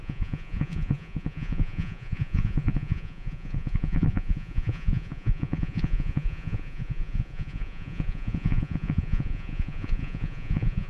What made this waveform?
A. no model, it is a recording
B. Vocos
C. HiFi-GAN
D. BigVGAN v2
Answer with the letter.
B